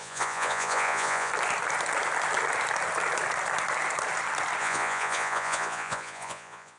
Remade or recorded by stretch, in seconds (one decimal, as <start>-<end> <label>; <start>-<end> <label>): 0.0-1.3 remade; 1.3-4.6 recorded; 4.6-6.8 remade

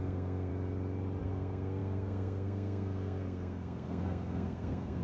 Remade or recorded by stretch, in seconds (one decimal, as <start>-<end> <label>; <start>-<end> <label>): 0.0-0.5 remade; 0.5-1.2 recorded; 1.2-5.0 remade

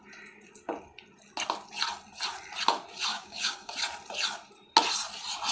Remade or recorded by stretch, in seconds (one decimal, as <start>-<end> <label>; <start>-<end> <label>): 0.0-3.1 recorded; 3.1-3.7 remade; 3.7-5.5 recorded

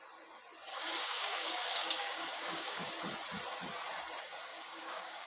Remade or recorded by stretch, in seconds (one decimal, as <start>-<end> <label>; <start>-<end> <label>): 0.0-0.7 recorded; 0.7-2.9 remade; 2.9-4.5 recorded; 4.5-5.3 remade

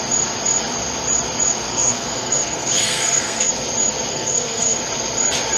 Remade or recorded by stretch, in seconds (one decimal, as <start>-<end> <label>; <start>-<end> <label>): 0.0-1.7 recorded; 1.7-3.5 remade; 3.5-4.1 recorded; 4.1-4.8 remade; 4.8-5.6 recorded